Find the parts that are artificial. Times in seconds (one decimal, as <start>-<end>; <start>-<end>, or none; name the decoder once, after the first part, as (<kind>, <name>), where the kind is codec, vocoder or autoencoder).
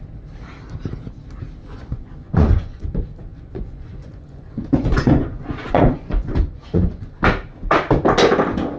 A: 1.6-2.9 (vocoder, Vocos); 3.3-7.2